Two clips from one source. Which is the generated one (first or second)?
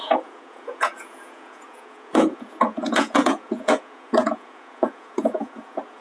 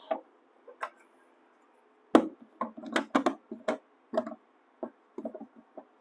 first